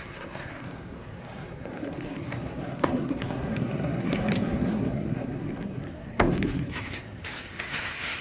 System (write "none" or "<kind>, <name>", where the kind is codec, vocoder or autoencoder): codec, SNAC